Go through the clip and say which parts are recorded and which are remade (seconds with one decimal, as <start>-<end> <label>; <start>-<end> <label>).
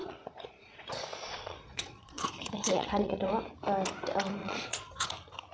0.0-3.3 remade; 3.3-4.4 recorded; 4.4-5.1 remade; 5.1-5.5 recorded